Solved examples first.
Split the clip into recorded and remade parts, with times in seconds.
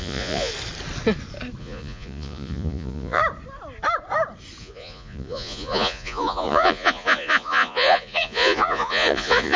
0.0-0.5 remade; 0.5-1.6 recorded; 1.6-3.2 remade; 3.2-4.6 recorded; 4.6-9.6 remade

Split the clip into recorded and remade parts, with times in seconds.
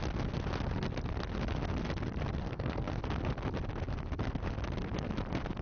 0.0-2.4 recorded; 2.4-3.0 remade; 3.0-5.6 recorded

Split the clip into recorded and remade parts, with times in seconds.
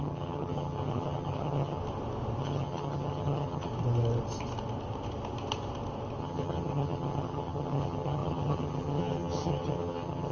0.0-1.8 remade; 1.8-2.4 recorded; 2.4-3.7 remade; 3.7-6.2 recorded; 6.2-10.3 remade